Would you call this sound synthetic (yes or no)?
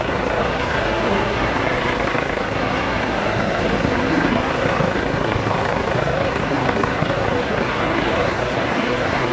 yes